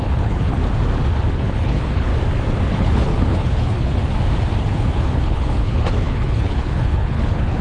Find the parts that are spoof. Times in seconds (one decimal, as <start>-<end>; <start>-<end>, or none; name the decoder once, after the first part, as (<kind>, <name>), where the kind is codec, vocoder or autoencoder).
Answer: 0.0-0.6 (codec, HILCodec); 1.3-2.1; 2.7-4.0; 4.6-7.6